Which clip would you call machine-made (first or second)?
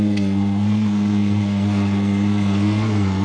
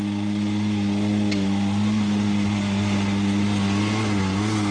first